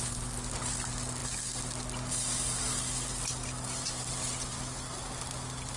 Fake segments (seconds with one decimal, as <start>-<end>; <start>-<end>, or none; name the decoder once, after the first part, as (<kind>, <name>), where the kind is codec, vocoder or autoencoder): none